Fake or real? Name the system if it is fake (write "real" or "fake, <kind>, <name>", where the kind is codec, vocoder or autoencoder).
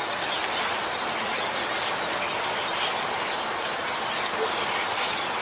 real